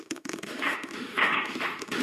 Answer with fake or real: fake